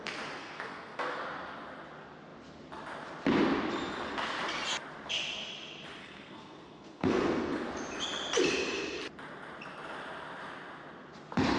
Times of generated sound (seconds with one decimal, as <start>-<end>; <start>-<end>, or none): 0.4-1.2; 6.0-7.7

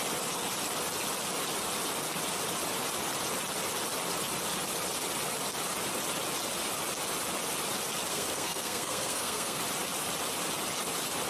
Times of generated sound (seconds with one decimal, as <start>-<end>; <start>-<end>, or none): 8.1-9.6

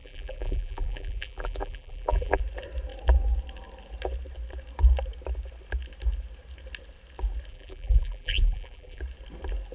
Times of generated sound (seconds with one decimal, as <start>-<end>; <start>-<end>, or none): 0.0-2.4; 7.5-9.0